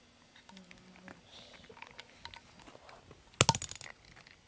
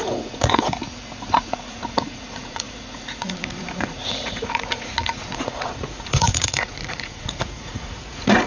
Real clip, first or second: first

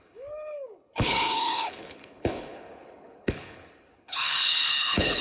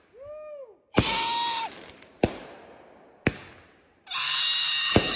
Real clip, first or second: second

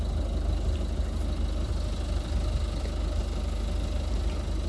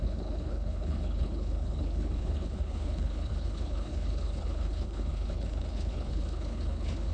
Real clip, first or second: first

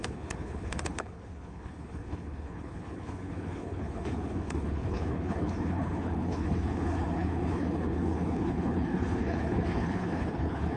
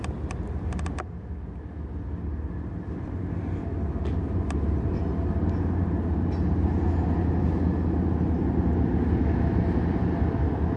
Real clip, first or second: second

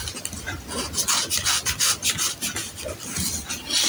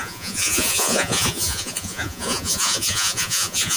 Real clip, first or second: first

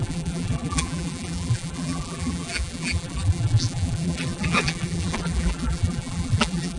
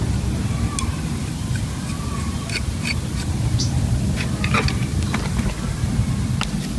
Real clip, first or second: second